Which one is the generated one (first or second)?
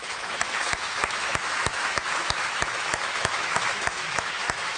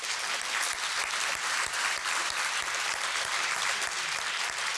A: first